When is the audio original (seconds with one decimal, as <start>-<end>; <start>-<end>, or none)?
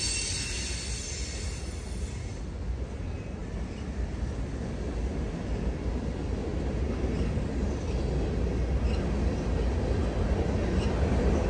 0.0-11.5